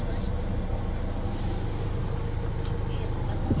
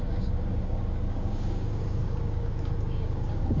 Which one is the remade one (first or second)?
second